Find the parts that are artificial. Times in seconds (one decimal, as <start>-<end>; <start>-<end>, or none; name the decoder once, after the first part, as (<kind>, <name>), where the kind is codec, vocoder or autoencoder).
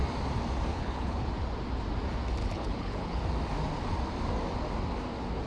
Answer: 0.7-1.3 (codec, HILCodec); 2.4-3.2